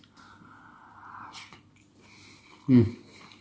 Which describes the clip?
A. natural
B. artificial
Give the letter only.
A